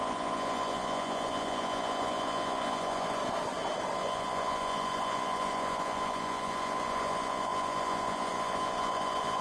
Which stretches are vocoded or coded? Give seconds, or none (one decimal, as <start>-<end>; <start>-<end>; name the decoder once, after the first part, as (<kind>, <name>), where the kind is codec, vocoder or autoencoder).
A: 0.0-3.2 (vocoder, Vocos); 4.0-9.4

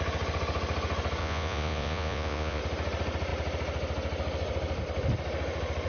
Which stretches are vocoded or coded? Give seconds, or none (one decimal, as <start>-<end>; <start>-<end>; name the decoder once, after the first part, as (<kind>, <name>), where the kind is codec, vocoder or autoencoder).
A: 1.2-2.6 (vocoder, Vocos)

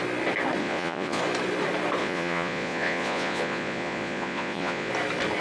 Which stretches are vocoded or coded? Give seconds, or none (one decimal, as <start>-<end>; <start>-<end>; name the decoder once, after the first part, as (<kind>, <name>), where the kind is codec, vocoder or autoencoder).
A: 0.6-1.2 (vocoder, Vocos); 2.0-4.9